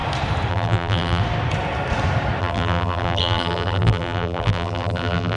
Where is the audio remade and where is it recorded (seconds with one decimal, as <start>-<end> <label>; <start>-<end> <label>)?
0.0-0.5 recorded; 0.5-1.2 remade; 1.2-2.4 recorded; 2.4-5.4 remade